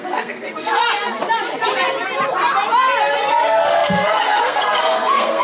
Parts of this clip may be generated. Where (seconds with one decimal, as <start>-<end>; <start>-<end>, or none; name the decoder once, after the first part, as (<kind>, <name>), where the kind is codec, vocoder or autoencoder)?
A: 0.0-0.8 (codec, SNAC); 3.3-5.4